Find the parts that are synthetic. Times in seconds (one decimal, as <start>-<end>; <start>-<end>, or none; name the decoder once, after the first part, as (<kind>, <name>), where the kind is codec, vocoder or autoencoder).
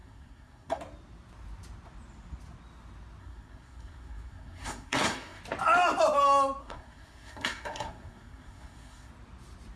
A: 0.0-0.8 (codec, SNAC); 3.2-5.4; 6.6-9.1